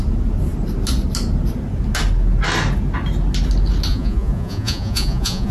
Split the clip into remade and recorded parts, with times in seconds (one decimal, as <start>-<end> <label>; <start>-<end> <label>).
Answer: 0.0-3.9 recorded; 3.9-5.5 remade